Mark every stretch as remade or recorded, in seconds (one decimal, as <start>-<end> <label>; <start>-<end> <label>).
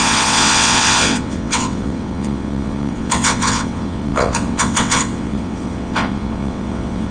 0.0-7.1 remade